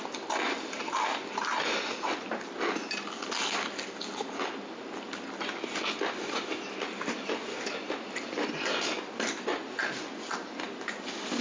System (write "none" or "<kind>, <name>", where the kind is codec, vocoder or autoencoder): none